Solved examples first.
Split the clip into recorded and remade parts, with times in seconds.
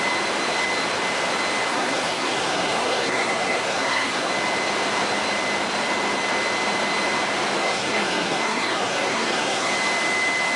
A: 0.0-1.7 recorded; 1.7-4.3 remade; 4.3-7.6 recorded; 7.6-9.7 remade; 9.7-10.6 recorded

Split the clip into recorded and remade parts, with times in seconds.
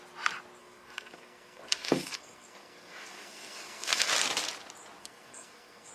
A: 0.0-0.6 recorded; 0.6-4.1 remade; 4.1-5.0 recorded; 5.0-5.9 remade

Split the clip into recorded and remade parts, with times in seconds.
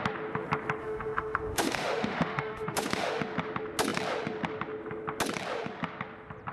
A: 0.0-0.8 recorded; 0.8-3.2 remade; 3.2-6.5 recorded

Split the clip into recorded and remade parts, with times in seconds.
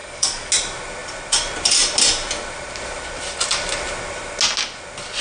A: 0.0-0.5 remade; 0.5-5.2 recorded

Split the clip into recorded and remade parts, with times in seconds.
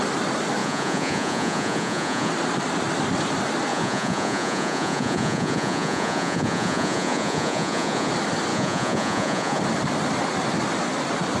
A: 0.0-0.6 recorded; 0.6-2.3 remade; 2.3-3.7 recorded; 3.7-8.1 remade; 8.1-8.5 recorded; 8.5-9.6 remade; 9.6-11.4 recorded